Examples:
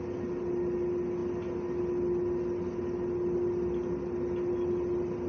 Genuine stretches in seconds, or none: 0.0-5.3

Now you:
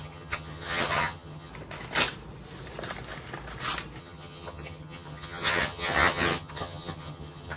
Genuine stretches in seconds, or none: 1.5-4.0

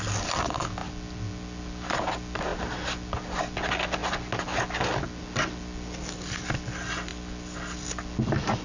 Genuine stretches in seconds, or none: 0.0-8.6

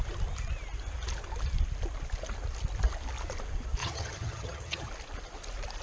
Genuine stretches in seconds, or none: 0.0-3.8; 4.9-5.8